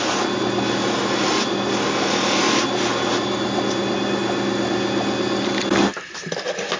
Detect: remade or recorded recorded